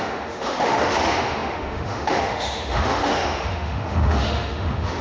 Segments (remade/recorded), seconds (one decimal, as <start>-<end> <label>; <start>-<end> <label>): 0.0-5.0 remade